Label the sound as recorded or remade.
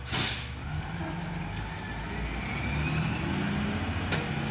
recorded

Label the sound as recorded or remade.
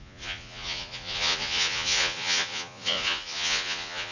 remade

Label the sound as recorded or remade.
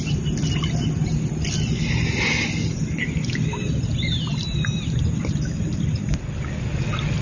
recorded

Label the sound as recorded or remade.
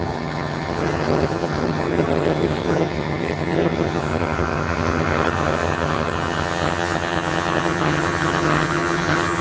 remade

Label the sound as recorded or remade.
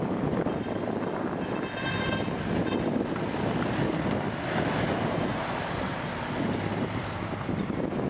recorded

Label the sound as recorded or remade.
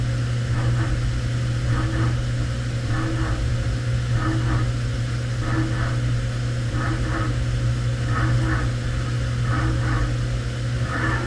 recorded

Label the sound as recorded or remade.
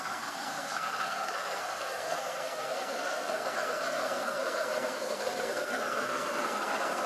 remade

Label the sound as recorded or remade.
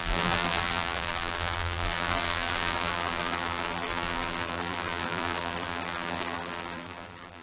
remade